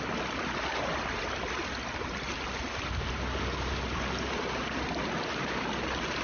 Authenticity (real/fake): real